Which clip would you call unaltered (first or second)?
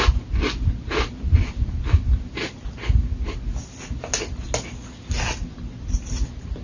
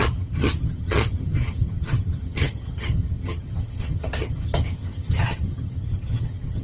first